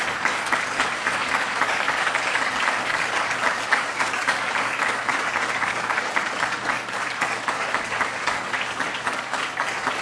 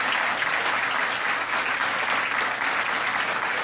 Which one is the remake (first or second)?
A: first